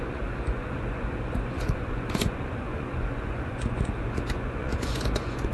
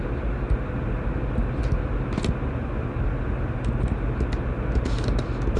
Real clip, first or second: second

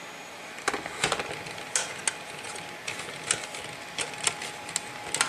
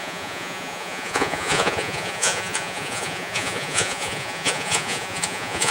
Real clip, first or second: first